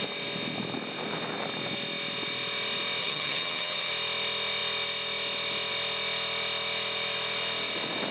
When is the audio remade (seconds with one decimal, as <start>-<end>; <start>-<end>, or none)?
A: 3.0-3.9